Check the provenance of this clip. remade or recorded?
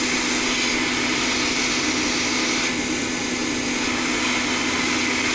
recorded